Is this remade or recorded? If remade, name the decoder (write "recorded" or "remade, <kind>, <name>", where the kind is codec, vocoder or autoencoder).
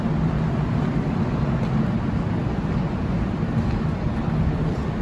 recorded